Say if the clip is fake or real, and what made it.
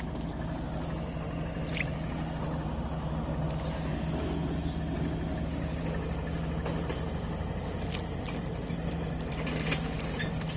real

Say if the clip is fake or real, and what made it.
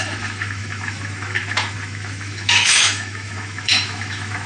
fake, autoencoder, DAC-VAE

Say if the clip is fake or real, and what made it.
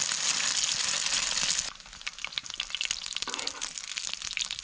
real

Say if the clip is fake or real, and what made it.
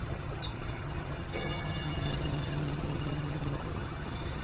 fake, vocoder, HiFi-GAN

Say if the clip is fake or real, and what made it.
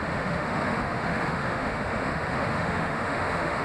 fake, autoencoder, DAC-VAE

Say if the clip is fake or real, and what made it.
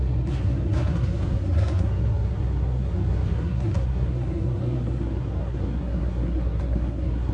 fake, codec, SNAC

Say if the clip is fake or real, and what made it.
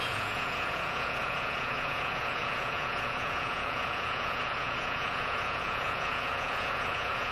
fake, vocoder, Vocos